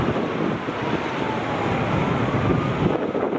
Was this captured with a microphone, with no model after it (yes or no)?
yes